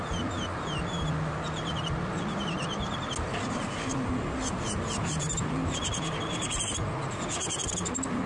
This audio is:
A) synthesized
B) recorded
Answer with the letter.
B